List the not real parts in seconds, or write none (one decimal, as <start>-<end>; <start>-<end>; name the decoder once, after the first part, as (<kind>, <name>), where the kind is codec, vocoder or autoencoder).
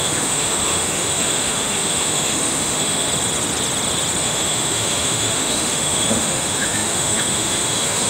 0.0-3.1 (autoencoder, DAC-VAE); 4.2-8.1